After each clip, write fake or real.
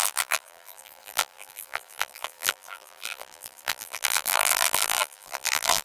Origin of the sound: fake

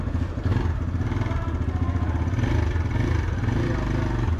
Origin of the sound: real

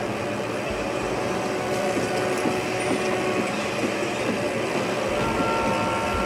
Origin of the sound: real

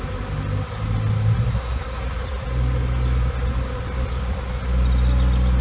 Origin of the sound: real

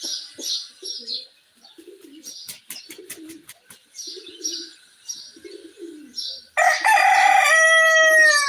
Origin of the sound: real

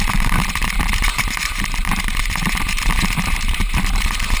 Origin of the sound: fake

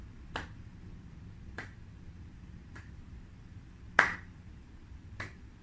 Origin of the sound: fake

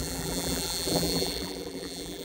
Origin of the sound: fake